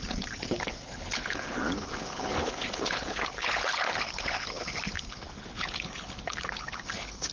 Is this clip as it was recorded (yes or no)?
no